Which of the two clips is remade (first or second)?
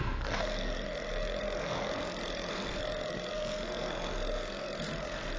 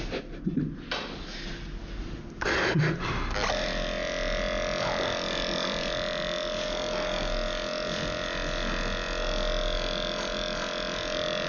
first